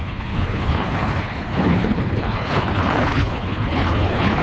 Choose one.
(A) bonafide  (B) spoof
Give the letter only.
B